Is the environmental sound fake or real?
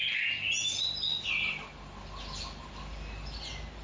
real